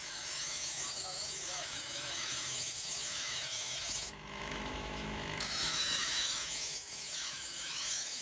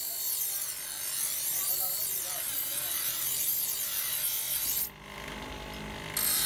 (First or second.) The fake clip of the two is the first